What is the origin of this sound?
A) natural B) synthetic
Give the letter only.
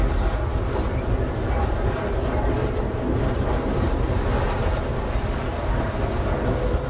A